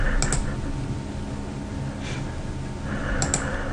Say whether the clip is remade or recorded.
recorded